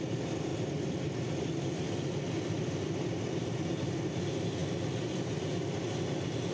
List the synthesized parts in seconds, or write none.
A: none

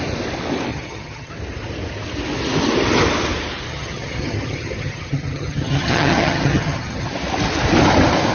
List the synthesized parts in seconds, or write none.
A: 0.7-1.3 (vocoder, HiFi-GAN); 3.7-7.1

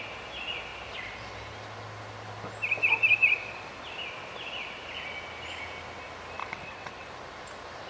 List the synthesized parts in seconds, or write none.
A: 6.4-7.1 (vocoder, WaveNeXt)

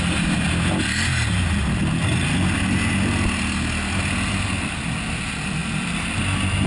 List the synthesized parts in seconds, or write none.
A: none

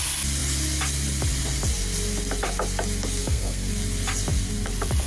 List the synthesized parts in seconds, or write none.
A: 3.2-3.7 (codec, SNAC)

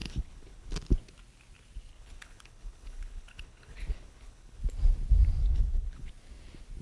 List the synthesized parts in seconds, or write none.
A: 0.0-0.7 (codec, HILCodec); 1.9-4.6; 5.4-6.1